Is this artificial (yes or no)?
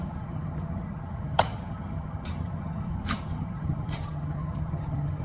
yes